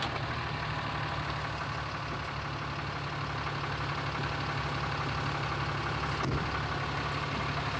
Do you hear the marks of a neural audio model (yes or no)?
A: no